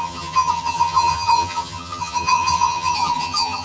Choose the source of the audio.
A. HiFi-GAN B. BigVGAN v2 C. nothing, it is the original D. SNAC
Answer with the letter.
A